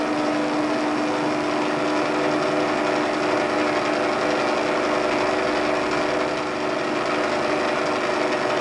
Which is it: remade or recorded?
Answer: recorded